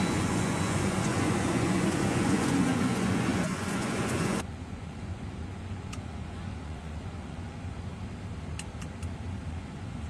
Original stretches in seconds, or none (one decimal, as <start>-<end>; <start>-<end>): 7.9-9.5